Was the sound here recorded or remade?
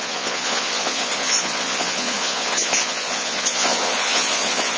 remade